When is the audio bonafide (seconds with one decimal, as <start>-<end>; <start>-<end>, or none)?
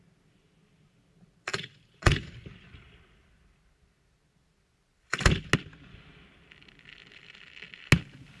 0.0-1.5; 2.3-8.4